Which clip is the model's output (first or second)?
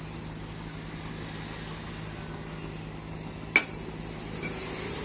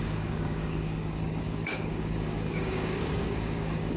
second